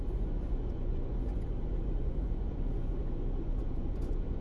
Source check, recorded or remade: remade